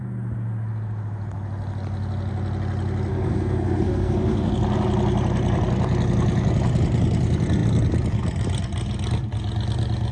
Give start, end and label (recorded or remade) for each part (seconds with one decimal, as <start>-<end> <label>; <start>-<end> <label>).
0.0-3.1 recorded; 3.1-4.5 remade; 4.5-10.1 recorded